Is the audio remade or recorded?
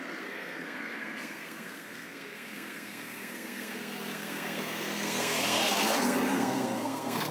remade